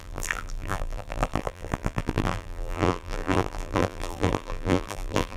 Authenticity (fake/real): fake